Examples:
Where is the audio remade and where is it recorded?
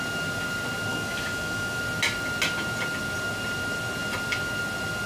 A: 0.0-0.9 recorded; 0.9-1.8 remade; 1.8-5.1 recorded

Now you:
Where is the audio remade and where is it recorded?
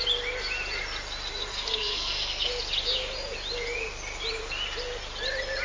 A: 0.0-1.5 recorded; 1.5-2.5 remade; 2.5-5.6 recorded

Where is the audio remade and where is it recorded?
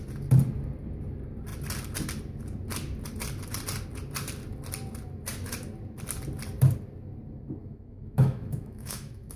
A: 0.0-7.6 recorded; 7.6-9.4 remade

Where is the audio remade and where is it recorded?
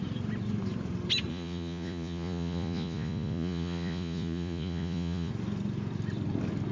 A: 0.0-1.3 recorded; 1.3-5.3 remade; 5.3-6.7 recorded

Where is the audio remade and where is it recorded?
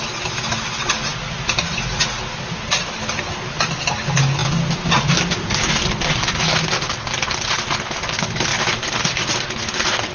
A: 0.0-10.1 recorded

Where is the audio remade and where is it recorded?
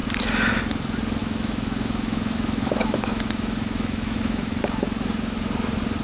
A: 0.0-1.2 recorded; 1.2-4.6 remade; 4.6-6.0 recorded